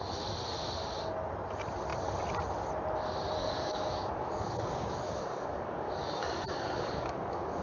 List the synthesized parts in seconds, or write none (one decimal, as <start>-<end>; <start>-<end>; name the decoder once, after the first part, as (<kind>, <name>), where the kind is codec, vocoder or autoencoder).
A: 3.4-7.6 (codec, DAC)

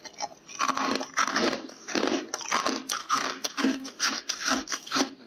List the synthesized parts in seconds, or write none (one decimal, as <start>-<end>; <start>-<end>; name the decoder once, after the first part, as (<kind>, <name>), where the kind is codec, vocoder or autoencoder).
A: 1.3-2.2 (codec, DAC); 3.0-5.3

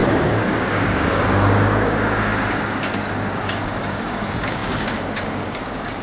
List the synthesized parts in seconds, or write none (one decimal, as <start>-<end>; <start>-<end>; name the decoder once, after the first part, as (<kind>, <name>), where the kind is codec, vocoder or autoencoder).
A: 0.0-6.0 (codec, DAC)